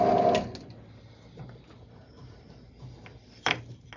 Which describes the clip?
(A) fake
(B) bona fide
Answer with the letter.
B